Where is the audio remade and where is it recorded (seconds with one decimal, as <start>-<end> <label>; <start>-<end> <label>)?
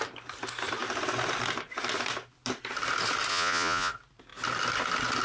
0.0-3.3 recorded; 3.3-3.9 remade; 3.9-5.2 recorded